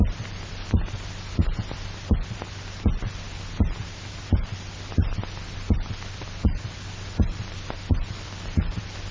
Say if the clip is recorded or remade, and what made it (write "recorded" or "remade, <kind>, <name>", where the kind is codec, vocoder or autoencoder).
recorded